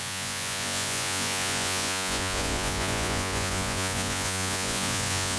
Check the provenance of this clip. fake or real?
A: fake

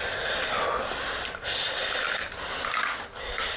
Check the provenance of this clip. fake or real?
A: real